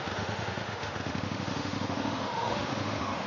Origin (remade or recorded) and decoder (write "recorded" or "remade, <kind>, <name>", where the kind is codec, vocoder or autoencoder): remade, autoencoder, DAC-VAE